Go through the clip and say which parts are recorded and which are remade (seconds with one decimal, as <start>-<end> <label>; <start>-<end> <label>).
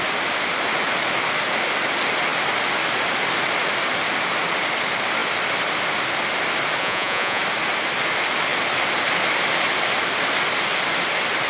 0.0-6.8 recorded; 6.8-7.4 remade; 7.4-11.5 recorded